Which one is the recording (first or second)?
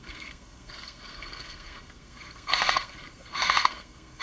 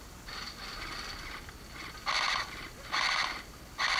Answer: second